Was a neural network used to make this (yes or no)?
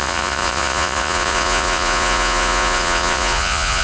yes